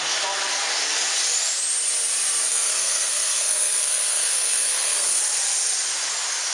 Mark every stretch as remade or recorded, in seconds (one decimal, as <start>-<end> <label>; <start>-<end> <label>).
0.0-2.5 recorded; 2.5-5.2 remade; 5.2-6.5 recorded